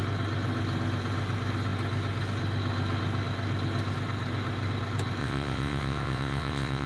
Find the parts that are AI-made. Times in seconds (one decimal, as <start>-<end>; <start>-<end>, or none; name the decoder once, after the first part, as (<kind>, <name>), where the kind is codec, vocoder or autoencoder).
5.2-6.9 (vocoder, WaveNeXt)